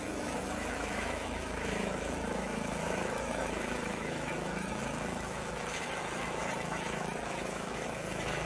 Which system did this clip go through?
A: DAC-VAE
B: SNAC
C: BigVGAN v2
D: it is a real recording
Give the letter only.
A